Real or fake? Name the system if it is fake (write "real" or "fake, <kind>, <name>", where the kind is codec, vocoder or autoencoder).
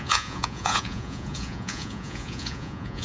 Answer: fake, vocoder, Vocos